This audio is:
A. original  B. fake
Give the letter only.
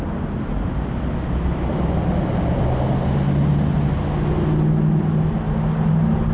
A